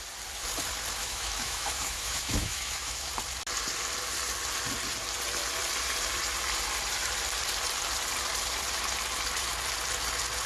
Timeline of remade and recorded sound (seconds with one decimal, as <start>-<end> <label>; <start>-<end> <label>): 0.0-1.0 recorded; 1.0-3.1 remade; 3.1-10.5 recorded